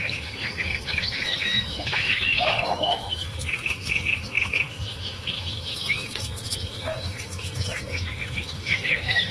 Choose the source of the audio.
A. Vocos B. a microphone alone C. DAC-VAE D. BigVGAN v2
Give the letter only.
C